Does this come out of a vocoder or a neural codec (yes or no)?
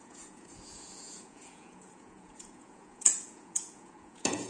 yes